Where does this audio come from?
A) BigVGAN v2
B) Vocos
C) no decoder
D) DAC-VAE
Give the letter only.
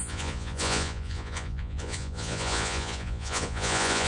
B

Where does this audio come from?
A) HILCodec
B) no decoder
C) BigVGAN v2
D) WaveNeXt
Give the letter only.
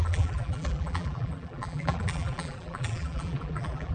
C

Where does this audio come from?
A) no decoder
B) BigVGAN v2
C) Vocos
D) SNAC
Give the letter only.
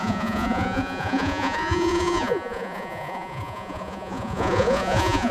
C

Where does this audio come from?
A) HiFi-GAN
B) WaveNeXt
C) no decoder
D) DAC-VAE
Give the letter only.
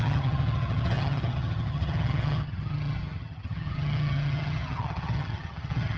A